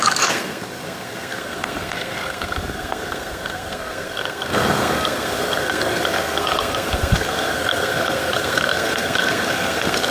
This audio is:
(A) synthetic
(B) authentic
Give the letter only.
A